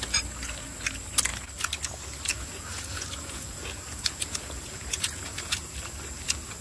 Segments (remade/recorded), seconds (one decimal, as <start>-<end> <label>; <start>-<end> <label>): 0.0-2.3 recorded; 2.3-5.7 remade; 5.7-6.6 recorded